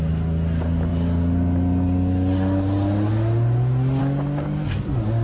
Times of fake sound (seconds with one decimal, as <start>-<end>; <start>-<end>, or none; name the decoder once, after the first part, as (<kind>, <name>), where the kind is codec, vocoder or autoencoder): none